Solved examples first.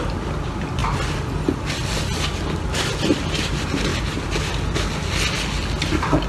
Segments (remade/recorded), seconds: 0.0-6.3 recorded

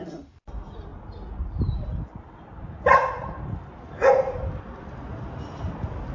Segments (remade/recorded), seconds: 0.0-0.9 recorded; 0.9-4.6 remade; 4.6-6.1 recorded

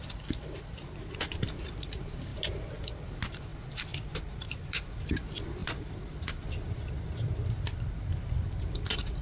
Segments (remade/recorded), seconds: 0.0-2.3 remade; 2.3-2.9 recorded; 2.9-3.5 remade; 3.5-4.2 recorded; 4.2-9.2 remade